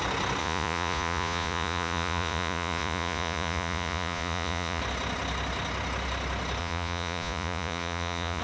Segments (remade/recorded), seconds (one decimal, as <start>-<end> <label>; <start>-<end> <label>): 0.0-0.4 recorded; 0.4-4.8 remade; 4.8-6.6 recorded; 6.6-8.4 remade